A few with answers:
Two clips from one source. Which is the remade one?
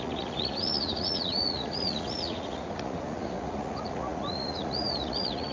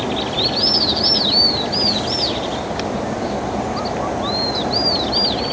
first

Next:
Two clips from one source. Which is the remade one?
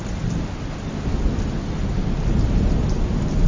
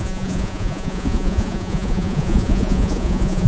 second